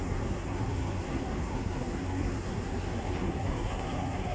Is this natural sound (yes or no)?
no